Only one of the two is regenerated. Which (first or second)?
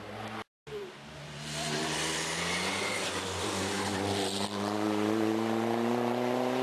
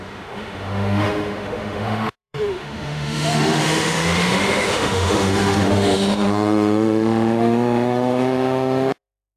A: second